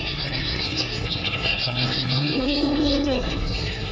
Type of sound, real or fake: fake